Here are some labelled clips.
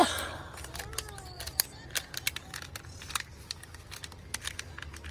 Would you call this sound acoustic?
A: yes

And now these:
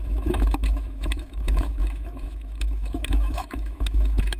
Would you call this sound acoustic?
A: no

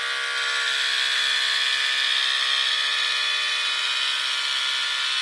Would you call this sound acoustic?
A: yes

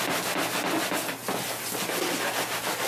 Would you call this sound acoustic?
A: yes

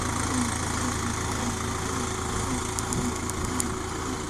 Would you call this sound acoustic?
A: yes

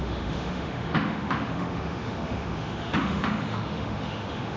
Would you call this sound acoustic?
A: no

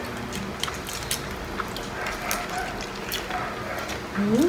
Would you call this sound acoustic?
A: yes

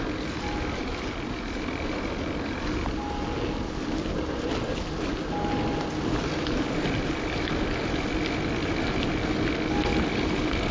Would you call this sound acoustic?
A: yes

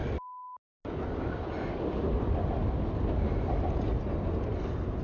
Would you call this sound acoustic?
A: yes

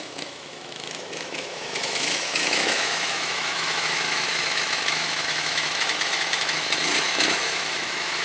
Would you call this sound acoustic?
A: no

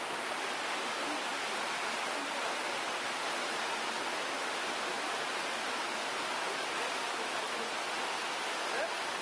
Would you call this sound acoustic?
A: yes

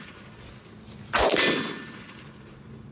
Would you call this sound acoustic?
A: yes